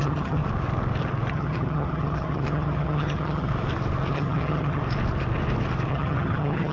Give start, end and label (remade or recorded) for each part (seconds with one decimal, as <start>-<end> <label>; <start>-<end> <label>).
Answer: 0.0-0.4 remade; 0.4-1.3 recorded; 1.3-3.5 remade; 3.5-4.1 recorded; 4.1-4.8 remade; 4.8-5.9 recorded; 5.9-6.7 remade

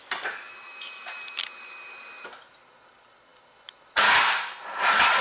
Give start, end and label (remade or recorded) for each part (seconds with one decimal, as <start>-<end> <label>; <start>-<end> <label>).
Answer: 0.0-0.5 remade; 0.5-5.2 recorded

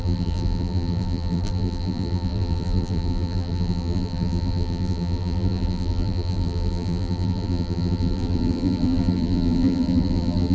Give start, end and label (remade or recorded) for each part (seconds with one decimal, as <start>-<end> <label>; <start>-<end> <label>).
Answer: 0.0-10.5 remade

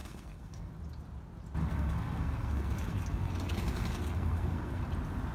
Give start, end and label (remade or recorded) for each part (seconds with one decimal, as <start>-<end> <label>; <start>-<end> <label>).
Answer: 0.0-0.7 remade; 0.7-1.6 recorded; 1.6-4.8 remade; 4.8-5.3 recorded

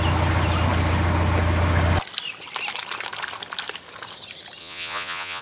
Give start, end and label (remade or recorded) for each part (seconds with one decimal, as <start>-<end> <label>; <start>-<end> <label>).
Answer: 0.0-4.6 recorded; 4.6-5.4 remade

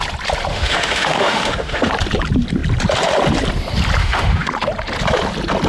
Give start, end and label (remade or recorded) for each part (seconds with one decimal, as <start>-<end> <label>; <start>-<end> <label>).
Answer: 0.0-0.5 recorded; 0.5-1.9 remade; 1.9-4.0 recorded; 4.0-4.5 remade; 4.5-5.7 recorded

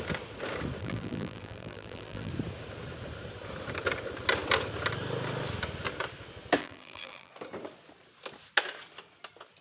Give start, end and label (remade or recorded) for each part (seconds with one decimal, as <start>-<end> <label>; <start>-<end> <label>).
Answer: 0.0-0.8 recorded; 0.8-2.3 remade; 2.3-6.6 recorded; 6.6-7.3 remade; 7.3-9.6 recorded